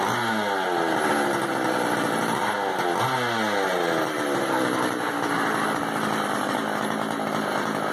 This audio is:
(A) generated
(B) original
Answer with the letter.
B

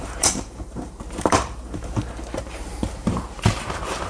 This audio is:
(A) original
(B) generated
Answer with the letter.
B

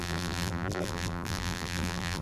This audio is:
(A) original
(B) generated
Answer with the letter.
B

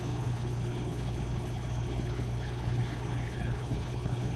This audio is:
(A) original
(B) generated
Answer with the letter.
B